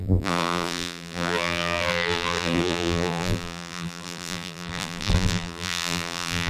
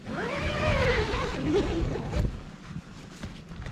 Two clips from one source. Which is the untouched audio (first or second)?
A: second